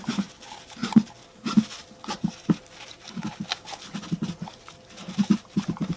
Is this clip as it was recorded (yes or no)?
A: yes